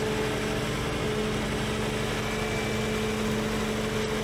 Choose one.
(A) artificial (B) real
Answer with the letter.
B